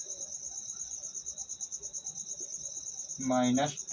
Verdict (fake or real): real